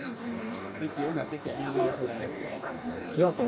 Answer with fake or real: fake